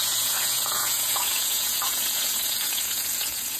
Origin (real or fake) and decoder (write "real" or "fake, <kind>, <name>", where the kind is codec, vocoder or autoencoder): fake, vocoder, Vocos